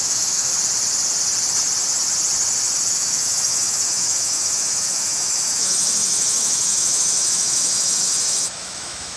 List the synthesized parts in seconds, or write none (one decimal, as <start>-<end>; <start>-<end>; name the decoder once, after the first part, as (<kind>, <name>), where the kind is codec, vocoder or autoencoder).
0.0-0.5 (autoencoder, DAC-VAE); 2.9-9.2